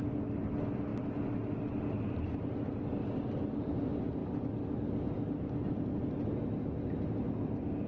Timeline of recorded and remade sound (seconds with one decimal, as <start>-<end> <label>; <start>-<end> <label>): 0.0-7.9 recorded

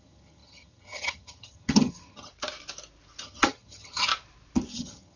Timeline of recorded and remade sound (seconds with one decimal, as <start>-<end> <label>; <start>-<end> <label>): 0.0-2.3 remade; 2.3-3.2 recorded; 3.2-4.1 remade; 4.1-4.7 recorded; 4.7-5.2 remade

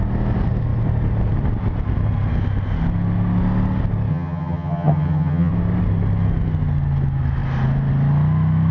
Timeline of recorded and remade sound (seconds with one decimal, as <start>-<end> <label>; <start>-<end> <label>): 0.0-4.1 recorded; 4.1-5.5 remade; 5.5-8.7 recorded

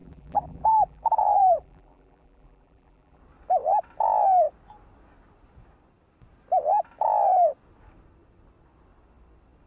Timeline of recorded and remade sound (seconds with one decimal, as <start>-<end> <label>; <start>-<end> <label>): 0.0-3.2 remade; 3.2-9.7 recorded

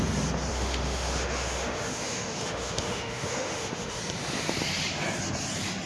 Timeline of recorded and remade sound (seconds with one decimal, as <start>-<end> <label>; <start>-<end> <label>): 0.0-0.5 recorded; 0.5-4.0 remade; 4.0-5.9 recorded

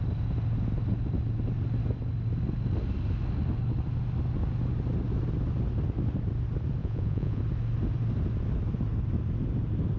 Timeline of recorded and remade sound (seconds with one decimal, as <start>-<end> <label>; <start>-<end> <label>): 0.0-6.8 recorded; 6.8-7.4 remade; 7.4-10.0 recorded